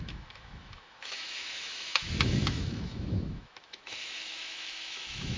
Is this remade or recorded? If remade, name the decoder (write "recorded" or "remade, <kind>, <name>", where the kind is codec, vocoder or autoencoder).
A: remade, autoencoder, DAC-VAE